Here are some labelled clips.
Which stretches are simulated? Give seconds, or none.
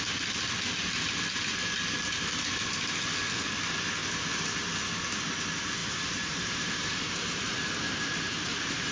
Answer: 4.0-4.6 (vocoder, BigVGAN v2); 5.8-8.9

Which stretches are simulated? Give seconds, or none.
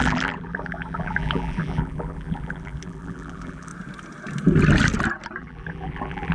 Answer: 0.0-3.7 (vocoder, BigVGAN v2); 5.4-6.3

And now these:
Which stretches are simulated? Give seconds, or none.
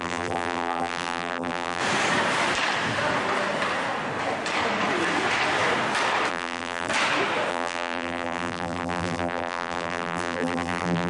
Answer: 0.0-1.8 (vocoder, BigVGAN v2); 6.3-6.9; 7.5-11.1